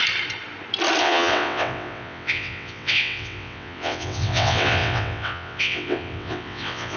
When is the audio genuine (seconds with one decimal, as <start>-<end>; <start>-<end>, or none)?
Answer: 0.0-1.0